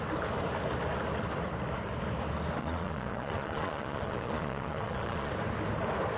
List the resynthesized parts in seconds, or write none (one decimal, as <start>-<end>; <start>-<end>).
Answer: 2.6-5.3